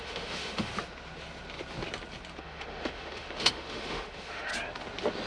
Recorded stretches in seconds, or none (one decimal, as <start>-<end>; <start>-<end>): 0.7-2.4; 4.5-5.3